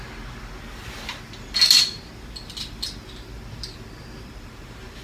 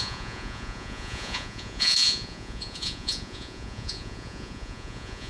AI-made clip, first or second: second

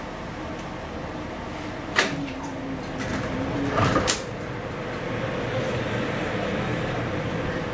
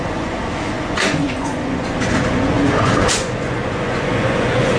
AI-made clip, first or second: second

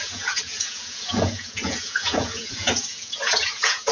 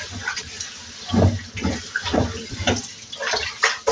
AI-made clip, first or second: first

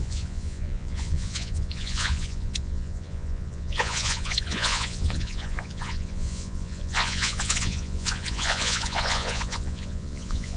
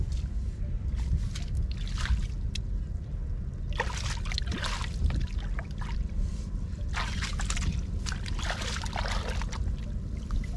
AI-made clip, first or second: first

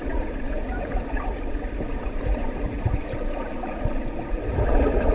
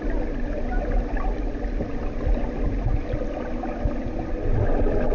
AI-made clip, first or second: first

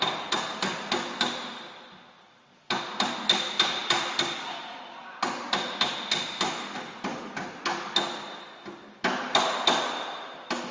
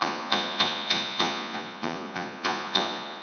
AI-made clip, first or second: second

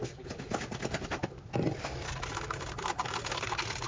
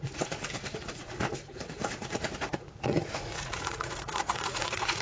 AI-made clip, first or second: second